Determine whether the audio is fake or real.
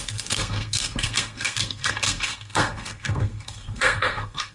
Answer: fake